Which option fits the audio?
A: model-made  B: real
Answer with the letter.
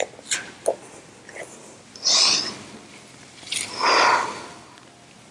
B